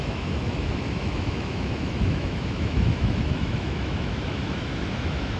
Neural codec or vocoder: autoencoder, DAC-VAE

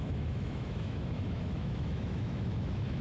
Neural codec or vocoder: autoencoder, DAC-VAE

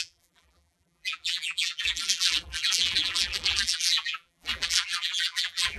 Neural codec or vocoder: vocoder, BigVGAN v2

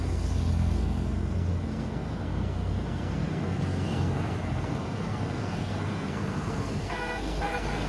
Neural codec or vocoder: codec, SNAC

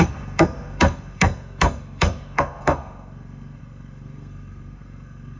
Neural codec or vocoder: codec, SNAC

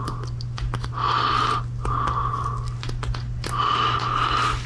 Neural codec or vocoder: none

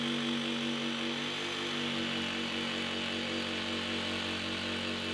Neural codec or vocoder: none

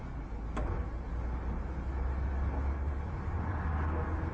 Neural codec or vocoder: none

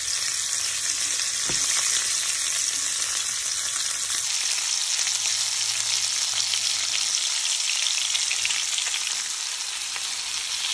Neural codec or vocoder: none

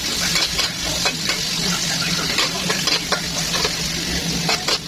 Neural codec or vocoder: none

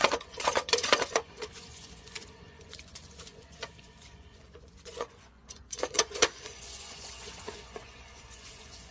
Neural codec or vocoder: vocoder, Vocos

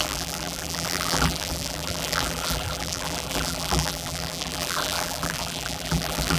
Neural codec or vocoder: vocoder, BigVGAN v2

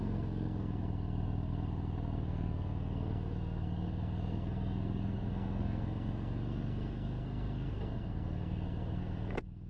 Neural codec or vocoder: codec, SNAC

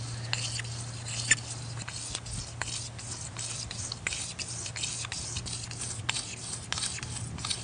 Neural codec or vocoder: none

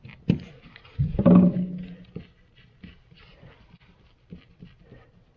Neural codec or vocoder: none